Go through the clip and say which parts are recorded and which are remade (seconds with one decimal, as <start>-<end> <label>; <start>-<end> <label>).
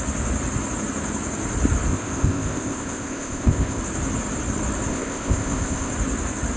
0.0-1.9 recorded; 1.9-3.8 remade; 3.8-4.9 recorded; 4.9-5.9 remade; 5.9-6.6 recorded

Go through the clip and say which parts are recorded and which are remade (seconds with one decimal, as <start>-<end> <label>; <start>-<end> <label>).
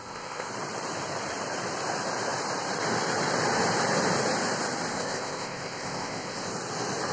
0.0-0.5 remade; 0.5-4.9 recorded; 4.9-6.5 remade; 6.5-7.1 recorded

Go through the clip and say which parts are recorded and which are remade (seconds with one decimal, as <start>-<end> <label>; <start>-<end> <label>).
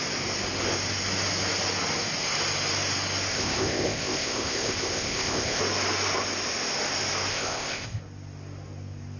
0.0-3.3 recorded; 3.3-5.6 remade; 5.6-7.3 recorded; 7.3-8.0 remade; 8.0-9.2 recorded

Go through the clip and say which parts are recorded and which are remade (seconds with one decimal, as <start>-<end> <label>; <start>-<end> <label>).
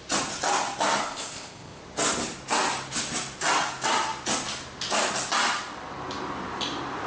0.0-1.0 recorded; 1.0-1.8 remade; 1.8-7.1 recorded